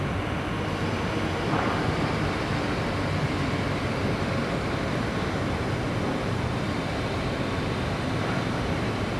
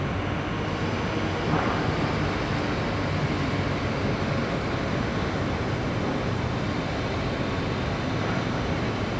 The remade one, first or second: first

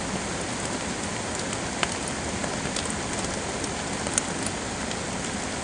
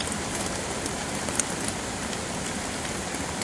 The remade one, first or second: second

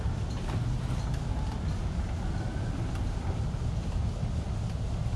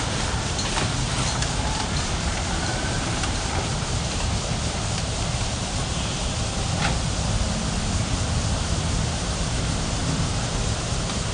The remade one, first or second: second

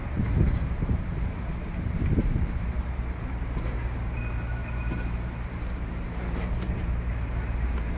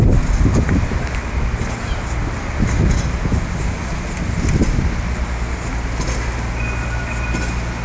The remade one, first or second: first